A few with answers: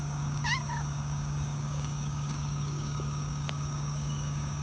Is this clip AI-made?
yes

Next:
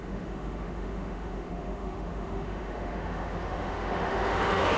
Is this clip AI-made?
yes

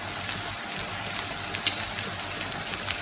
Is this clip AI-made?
no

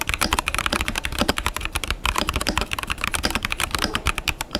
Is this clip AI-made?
yes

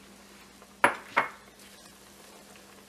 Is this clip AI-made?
no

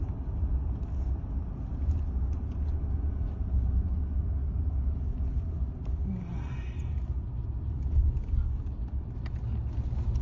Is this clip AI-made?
no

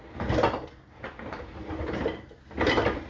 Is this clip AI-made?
no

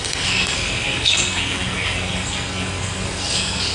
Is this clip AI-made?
yes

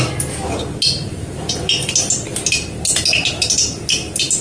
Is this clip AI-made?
no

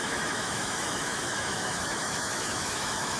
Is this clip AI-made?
yes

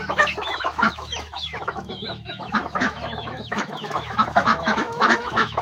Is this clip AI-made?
yes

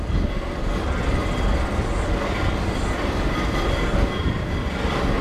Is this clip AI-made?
no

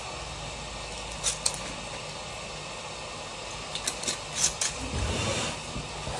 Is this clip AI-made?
no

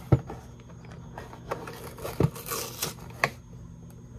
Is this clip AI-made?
no